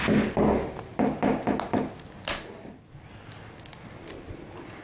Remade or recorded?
recorded